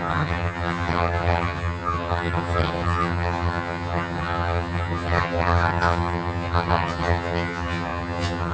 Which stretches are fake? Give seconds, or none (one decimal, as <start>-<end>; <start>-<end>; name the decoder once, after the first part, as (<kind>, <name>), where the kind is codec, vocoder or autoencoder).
0.0-8.5 (vocoder, HiFi-GAN)